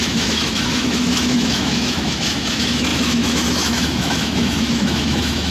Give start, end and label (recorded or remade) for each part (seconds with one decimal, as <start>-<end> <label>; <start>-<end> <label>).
0.0-5.5 remade